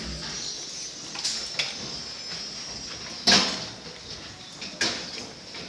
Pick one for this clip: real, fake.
real